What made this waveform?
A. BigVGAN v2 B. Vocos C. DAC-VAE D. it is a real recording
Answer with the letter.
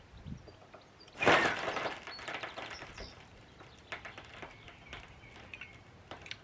D